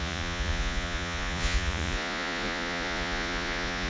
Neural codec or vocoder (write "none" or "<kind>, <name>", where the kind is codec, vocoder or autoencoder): vocoder, Vocos